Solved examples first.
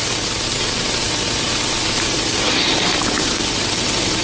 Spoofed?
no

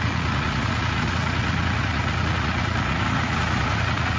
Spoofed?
yes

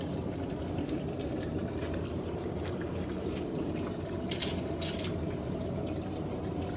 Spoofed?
yes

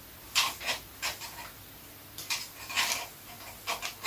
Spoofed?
no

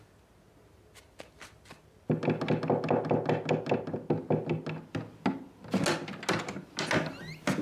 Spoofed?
no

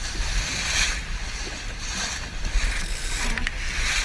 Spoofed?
no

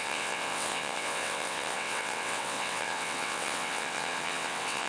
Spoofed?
yes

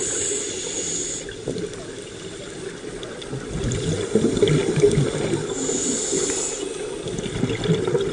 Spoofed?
no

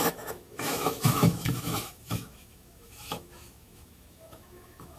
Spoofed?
yes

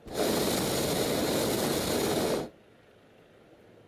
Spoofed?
no